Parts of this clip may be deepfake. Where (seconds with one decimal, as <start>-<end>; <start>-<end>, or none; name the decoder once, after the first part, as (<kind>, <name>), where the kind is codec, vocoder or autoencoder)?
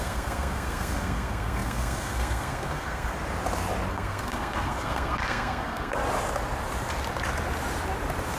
0.0-3.1 (codec, SNAC); 3.9-6.0